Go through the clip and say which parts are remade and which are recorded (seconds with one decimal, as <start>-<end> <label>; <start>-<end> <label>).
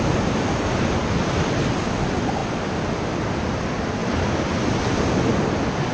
0.0-2.4 recorded; 2.4-3.1 remade; 3.1-4.0 recorded; 4.0-4.8 remade; 4.8-5.9 recorded